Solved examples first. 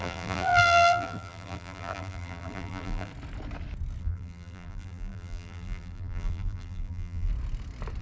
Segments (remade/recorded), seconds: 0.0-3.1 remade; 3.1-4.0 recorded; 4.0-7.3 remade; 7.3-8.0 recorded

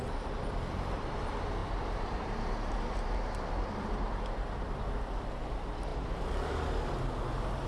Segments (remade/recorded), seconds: 0.0-1.6 recorded; 1.6-4.2 remade; 4.2-7.7 recorded

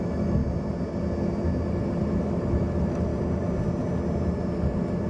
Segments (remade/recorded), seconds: 0.0-0.4 remade; 0.4-2.2 recorded; 2.2-3.1 remade; 3.1-5.1 recorded

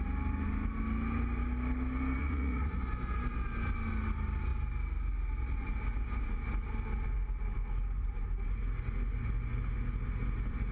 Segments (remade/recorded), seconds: 0.0-2.2 recorded; 2.2-2.8 remade; 2.8-10.7 recorded

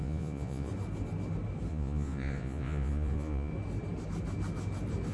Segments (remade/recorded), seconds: 0.0-0.7 remade; 0.7-1.7 recorded; 1.7-3.5 remade; 3.5-5.1 recorded

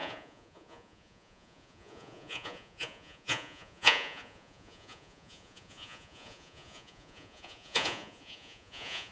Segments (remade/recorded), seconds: 0.0-9.1 remade

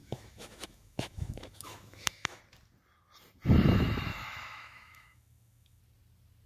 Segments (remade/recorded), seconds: 0.0-2.4 remade; 2.4-4.1 recorded; 4.1-5.8 remade; 5.8-6.5 recorded